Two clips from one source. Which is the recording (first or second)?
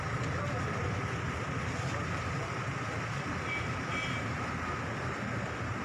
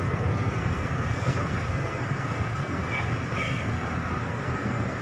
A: first